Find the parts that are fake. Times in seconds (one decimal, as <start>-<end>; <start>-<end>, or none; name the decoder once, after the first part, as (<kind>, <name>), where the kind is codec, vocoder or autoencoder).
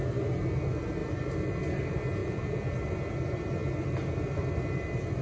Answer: 2.2-2.7 (vocoder, Vocos)